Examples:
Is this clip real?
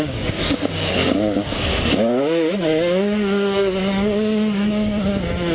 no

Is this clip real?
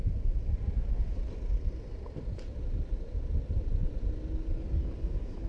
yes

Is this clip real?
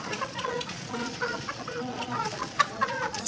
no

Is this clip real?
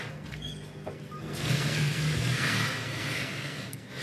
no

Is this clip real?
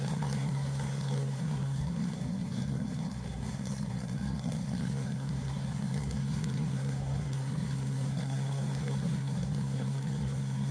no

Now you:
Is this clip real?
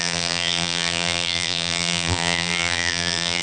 no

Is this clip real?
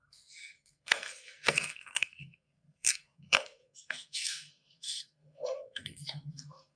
no